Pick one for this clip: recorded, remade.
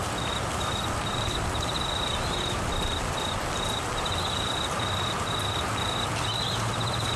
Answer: recorded